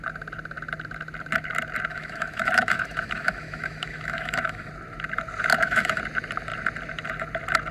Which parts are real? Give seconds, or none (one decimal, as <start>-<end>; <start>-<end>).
0.0-1.9; 4.7-5.5; 6.0-7.7